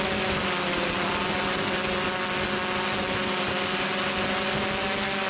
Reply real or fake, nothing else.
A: real